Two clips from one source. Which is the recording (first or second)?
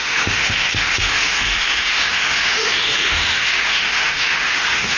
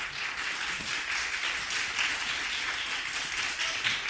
second